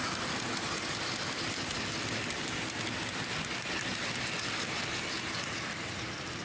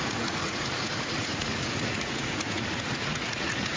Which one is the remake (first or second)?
second